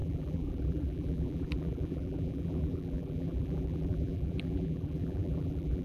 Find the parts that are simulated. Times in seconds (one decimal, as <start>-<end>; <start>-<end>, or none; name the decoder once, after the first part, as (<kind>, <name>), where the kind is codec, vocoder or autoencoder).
0.0-5.8 (vocoder, BigVGAN v2)